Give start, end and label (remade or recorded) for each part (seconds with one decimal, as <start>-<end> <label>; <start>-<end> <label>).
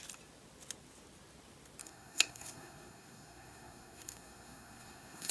0.0-1.8 recorded; 1.8-5.3 remade